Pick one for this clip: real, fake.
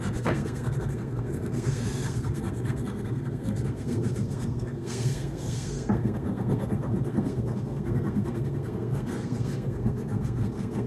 fake